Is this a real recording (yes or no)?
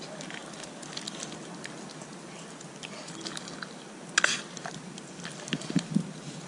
yes